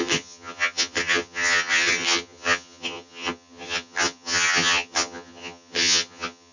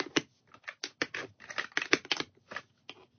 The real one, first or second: second